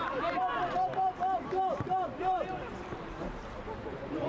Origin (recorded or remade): remade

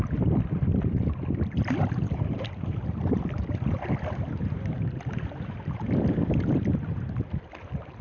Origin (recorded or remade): remade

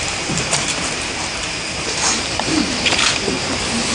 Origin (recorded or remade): remade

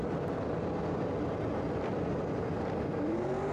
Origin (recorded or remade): recorded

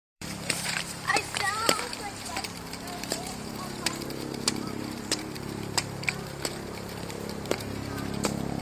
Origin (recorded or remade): remade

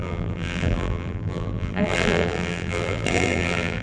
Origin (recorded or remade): remade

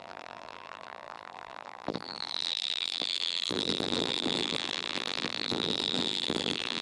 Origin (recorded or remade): remade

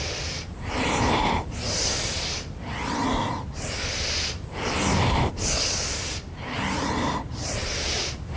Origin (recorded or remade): remade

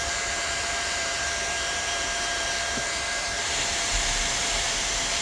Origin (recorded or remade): remade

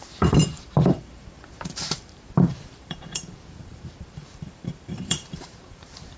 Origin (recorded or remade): remade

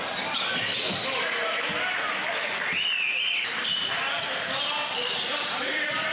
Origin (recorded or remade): remade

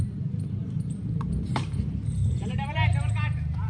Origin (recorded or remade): remade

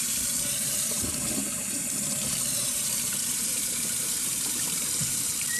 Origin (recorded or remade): remade